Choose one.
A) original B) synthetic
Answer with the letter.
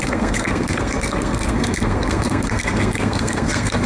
B